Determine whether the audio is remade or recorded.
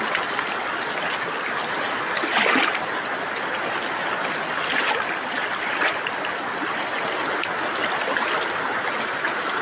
recorded